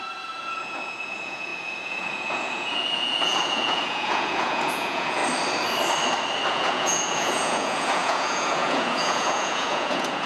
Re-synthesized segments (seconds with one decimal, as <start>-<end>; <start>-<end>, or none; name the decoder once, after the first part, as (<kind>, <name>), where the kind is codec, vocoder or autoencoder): 0.0-5.2 (vocoder, Vocos); 6.5-10.3